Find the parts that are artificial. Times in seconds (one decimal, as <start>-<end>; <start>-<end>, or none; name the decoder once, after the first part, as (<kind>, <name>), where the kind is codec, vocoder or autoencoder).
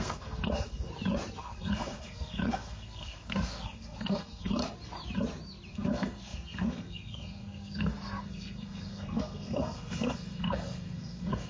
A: 0.0-0.9 (codec, SNAC); 1.4-4.6; 5.7-11.5